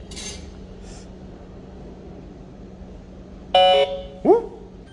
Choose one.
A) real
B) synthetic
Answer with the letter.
A